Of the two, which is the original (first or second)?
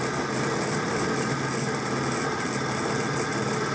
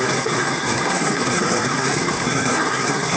first